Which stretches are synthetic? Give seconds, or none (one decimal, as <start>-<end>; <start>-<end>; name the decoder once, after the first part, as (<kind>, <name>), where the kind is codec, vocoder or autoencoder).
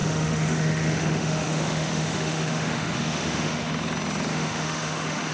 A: 0.0-3.7 (autoencoder, DAC-VAE); 4.3-5.3